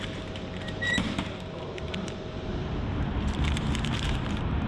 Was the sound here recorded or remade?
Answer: remade